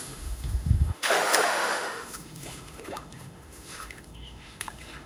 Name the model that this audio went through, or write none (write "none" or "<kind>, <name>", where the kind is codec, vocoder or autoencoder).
autoencoder, DAC-VAE